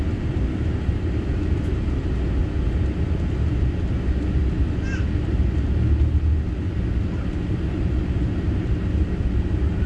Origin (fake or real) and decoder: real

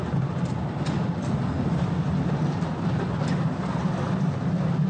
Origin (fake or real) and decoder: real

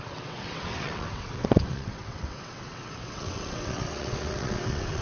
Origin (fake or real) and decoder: fake, vocoder, WaveNeXt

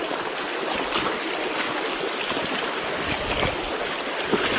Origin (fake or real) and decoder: real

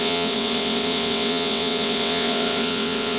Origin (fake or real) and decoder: fake, vocoder, WaveNeXt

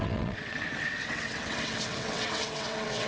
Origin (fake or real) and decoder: fake, vocoder, WaveNeXt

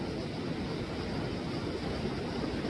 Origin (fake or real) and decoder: real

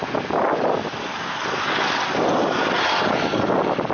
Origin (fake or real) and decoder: real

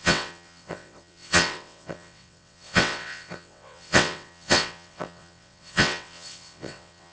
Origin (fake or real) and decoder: fake, vocoder, WaveNeXt